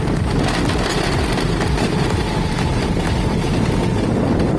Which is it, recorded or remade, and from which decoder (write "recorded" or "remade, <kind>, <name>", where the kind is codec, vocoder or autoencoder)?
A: recorded